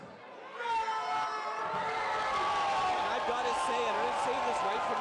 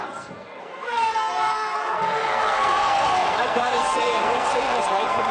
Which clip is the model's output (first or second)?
second